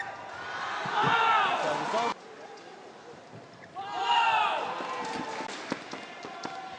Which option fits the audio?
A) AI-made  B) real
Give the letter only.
B